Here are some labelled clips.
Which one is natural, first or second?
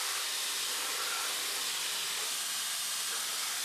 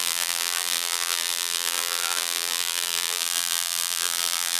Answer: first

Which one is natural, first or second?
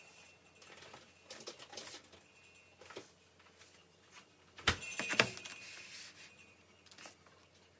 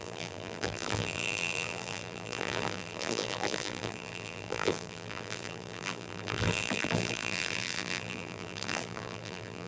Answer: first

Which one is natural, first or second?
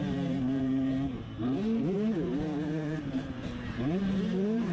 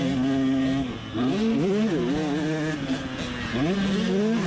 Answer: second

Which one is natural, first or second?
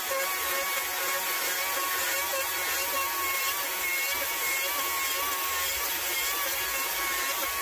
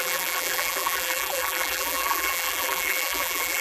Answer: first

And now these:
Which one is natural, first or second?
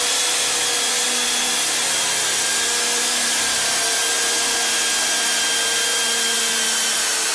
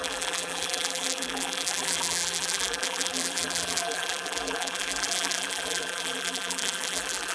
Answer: first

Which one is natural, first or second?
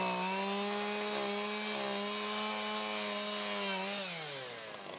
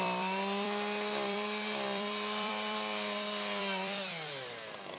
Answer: first